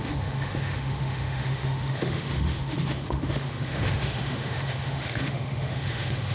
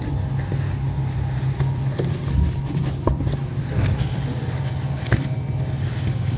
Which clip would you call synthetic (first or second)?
first